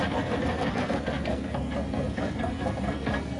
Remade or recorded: remade